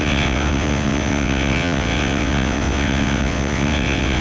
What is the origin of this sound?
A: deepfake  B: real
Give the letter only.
A